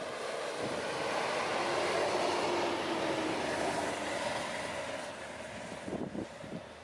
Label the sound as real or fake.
real